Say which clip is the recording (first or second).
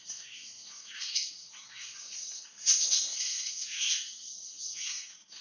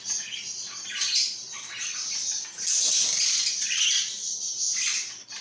second